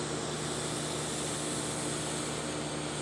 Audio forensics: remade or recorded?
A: recorded